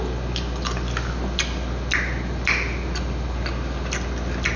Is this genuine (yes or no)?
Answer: yes